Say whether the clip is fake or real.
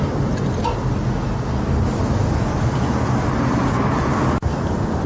real